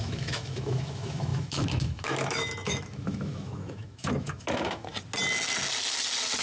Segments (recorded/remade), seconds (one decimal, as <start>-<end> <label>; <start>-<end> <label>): 0.0-4.9 remade; 4.9-6.4 recorded

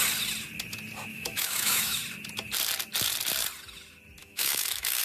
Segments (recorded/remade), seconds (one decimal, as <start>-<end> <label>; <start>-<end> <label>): 0.0-1.1 recorded; 1.1-2.0 remade; 2.0-4.2 recorded; 4.2-5.0 remade

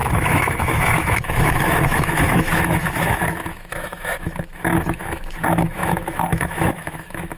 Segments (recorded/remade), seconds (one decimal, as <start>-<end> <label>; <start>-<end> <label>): 0.0-7.4 remade

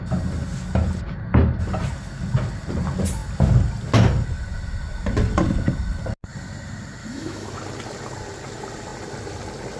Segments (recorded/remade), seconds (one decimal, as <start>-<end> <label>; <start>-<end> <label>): 0.0-7.0 recorded; 7.0-7.5 remade; 7.5-9.8 recorded

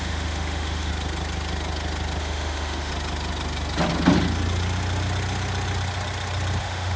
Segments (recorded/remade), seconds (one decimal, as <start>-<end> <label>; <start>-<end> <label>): 0.0-0.9 remade; 0.9-2.2 recorded; 2.2-2.9 remade; 2.9-6.6 recorded; 6.6-7.0 remade

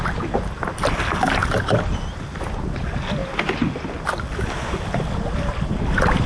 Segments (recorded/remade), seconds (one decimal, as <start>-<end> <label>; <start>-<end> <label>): 0.0-6.3 recorded

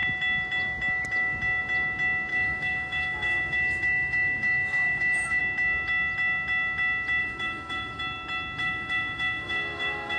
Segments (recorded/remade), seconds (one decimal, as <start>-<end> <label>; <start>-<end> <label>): 0.0-2.3 recorded; 2.3-5.4 remade; 5.4-7.2 recorded; 7.2-8.0 remade; 8.0-8.6 recorded; 8.6-10.2 remade